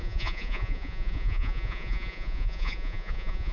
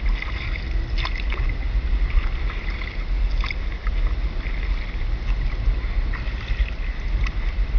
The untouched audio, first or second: second